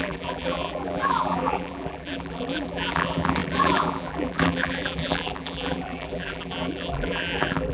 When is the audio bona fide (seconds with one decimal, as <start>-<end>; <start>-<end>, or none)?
none